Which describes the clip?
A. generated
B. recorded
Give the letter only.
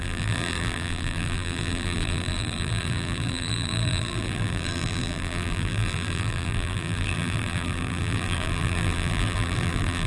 A